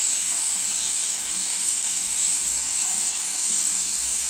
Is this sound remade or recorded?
remade